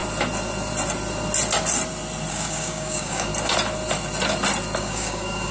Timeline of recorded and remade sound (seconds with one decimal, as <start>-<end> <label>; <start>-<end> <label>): 0.0-2.3 recorded; 2.3-3.3 remade; 3.3-4.8 recorded; 4.8-5.5 remade